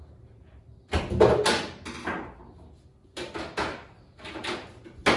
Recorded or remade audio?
recorded